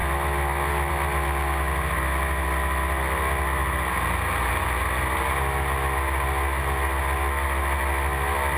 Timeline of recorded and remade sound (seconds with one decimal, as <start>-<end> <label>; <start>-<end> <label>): 0.0-8.6 recorded